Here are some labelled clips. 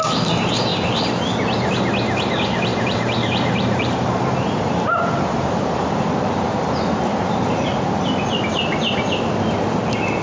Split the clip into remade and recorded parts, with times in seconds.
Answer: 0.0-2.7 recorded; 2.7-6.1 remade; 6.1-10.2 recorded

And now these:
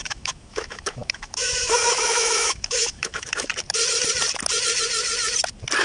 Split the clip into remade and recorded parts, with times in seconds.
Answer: 0.0-3.5 remade; 3.5-5.8 recorded

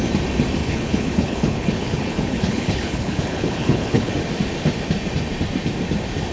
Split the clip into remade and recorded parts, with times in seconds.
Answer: 0.0-0.6 recorded; 0.6-4.1 remade; 4.1-6.3 recorded

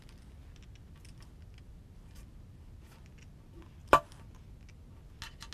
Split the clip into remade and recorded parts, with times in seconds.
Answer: 0.0-5.5 recorded

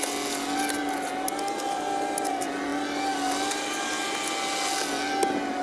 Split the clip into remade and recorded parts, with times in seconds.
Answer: 0.0-5.6 recorded

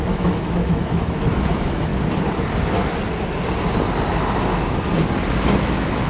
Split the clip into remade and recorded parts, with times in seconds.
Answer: 0.0-1.9 remade; 1.9-5.6 recorded; 5.6-6.1 remade

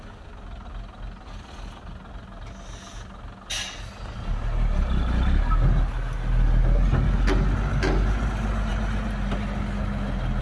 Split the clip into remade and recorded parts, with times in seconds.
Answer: 0.0-10.4 recorded